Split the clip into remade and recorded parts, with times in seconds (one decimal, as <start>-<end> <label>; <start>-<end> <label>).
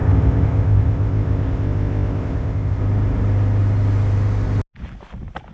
0.0-2.8 remade; 2.8-5.5 recorded